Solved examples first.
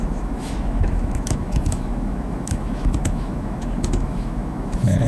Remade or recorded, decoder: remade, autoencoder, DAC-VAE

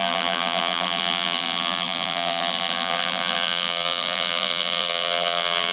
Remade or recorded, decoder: remade, vocoder, BigVGAN v2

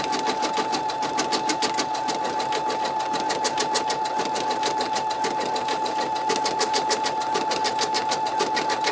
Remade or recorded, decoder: recorded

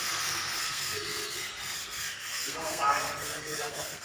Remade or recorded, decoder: remade, codec, SNAC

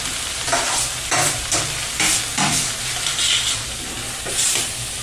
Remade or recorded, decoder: recorded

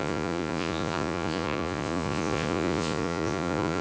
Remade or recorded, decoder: remade, vocoder, Vocos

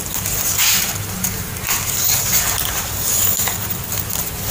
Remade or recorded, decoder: recorded